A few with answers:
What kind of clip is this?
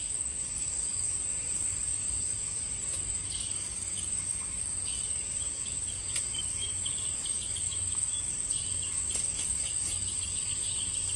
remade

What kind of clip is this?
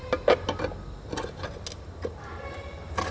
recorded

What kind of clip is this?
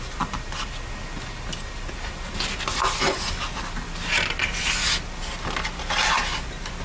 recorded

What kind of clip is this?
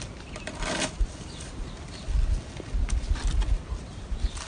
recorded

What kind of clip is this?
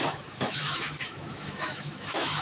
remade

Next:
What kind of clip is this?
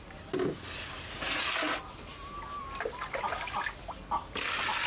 recorded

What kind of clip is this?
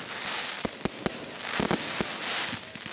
recorded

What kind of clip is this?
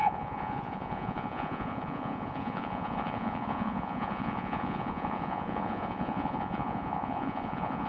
remade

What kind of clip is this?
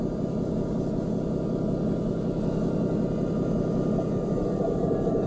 recorded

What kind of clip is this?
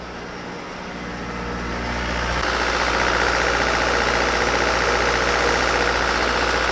recorded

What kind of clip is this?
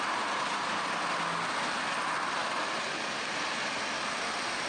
recorded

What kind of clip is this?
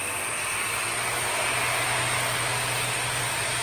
recorded